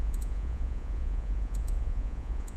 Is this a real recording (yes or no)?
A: no